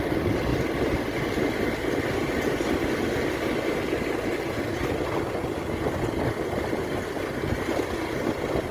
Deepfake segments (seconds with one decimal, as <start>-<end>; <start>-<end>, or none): none